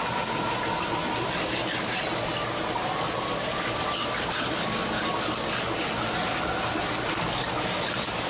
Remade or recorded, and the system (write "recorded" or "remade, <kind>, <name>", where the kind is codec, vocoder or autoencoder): recorded